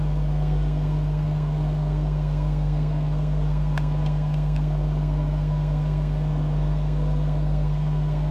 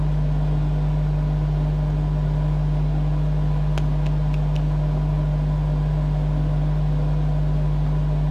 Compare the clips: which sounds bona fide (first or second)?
second